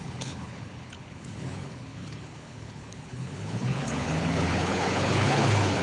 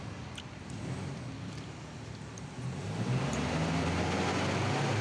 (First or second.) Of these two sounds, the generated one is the first